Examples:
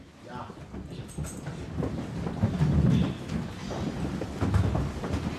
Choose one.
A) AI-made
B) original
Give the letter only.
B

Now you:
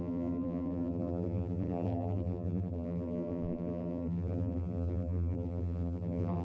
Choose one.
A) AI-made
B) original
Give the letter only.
A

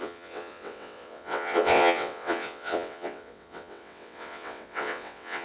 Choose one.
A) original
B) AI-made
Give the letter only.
B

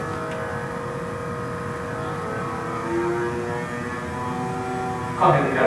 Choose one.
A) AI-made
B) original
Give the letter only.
B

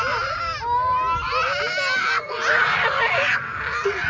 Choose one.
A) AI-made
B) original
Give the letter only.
B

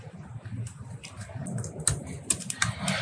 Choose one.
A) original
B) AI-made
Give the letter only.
A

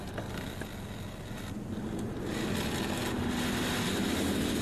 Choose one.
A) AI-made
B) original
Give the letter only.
B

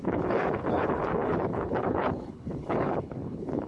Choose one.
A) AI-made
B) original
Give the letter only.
A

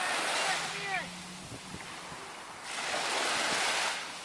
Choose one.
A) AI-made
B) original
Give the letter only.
B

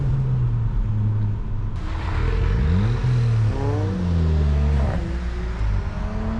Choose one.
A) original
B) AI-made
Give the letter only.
A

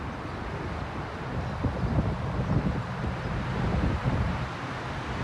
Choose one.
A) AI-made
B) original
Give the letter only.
B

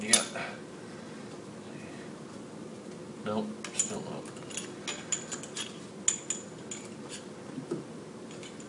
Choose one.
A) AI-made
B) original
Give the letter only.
B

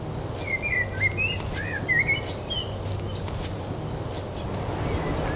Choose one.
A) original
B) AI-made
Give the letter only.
A